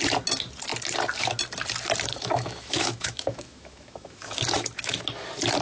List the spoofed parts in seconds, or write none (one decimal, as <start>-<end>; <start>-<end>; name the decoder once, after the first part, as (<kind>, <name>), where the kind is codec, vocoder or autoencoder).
2.1-5.0 (autoencoder, DAC-VAE)